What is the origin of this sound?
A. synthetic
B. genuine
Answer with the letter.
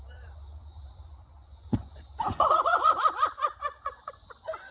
A